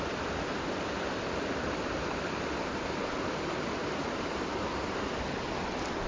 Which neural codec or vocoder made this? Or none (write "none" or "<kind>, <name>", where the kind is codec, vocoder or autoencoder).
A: none